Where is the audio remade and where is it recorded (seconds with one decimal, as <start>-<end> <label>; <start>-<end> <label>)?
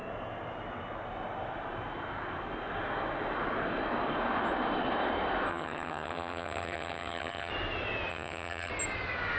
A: 0.0-5.5 recorded; 5.5-7.5 remade; 7.5-8.1 recorded; 8.1-8.7 remade; 8.7-9.4 recorded